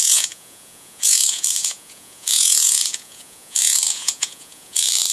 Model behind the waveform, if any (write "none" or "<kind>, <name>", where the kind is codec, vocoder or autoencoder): vocoder, Vocos